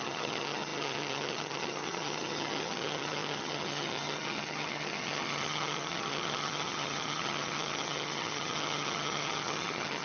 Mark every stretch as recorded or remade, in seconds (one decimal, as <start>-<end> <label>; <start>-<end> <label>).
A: 0.0-10.0 remade